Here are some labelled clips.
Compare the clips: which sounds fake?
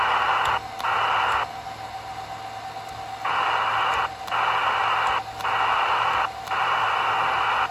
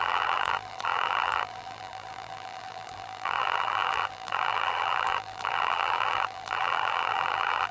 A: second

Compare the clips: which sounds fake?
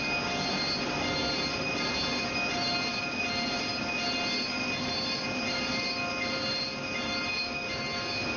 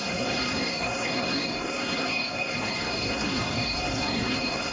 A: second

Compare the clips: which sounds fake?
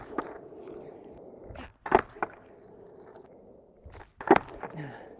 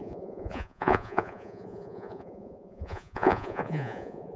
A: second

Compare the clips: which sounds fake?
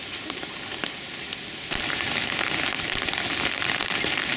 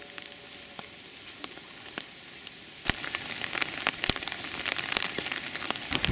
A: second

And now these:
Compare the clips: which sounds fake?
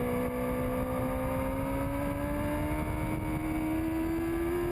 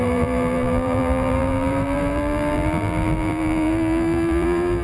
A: second